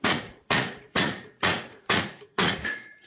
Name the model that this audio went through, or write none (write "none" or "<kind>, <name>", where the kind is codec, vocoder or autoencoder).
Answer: vocoder, Vocos